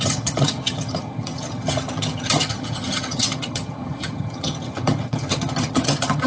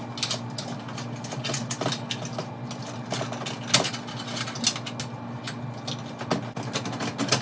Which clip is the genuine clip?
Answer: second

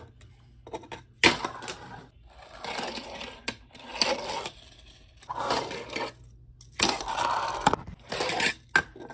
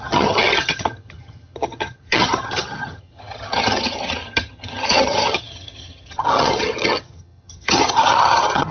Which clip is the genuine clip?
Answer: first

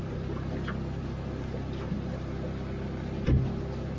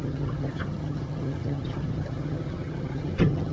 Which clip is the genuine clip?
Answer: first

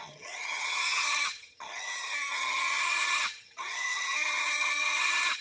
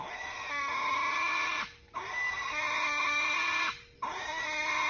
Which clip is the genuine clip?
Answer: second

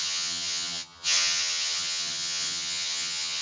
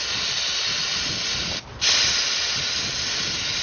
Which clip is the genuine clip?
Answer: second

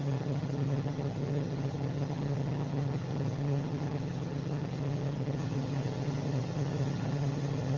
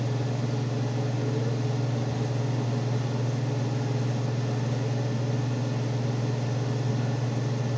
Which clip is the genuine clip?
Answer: second